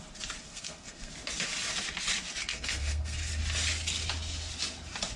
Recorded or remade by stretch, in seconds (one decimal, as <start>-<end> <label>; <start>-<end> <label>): 0.0-0.4 recorded; 0.4-1.1 remade; 1.1-2.5 recorded; 2.5-3.3 remade; 3.3-5.2 recorded